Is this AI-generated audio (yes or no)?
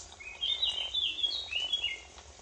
no